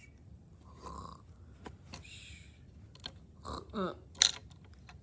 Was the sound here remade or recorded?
recorded